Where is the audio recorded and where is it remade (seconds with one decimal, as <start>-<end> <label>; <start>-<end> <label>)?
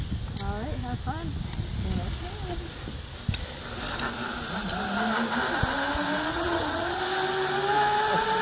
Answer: 0.0-6.3 recorded; 6.3-7.0 remade; 7.0-8.4 recorded